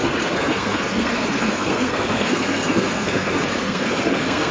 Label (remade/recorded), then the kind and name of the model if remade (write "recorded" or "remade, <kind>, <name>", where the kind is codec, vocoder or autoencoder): remade, codec, SNAC